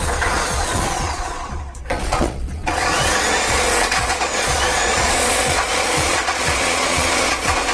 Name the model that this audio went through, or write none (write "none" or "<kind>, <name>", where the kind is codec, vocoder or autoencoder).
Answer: vocoder, Vocos